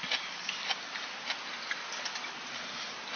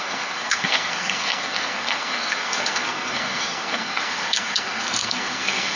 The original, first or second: first